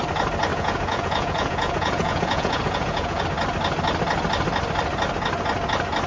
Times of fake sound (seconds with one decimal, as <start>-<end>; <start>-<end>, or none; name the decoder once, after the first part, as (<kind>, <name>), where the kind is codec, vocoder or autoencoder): 0.5-3.2 (vocoder, Vocos)